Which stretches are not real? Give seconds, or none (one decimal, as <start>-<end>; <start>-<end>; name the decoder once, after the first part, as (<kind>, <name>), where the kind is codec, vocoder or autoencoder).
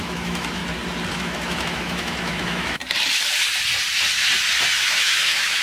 0.0-0.6 (autoencoder, DAC-VAE); 1.1-2.8; 4.8-5.6